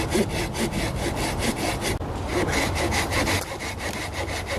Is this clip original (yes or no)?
yes